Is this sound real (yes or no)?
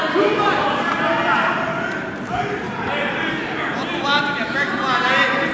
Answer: yes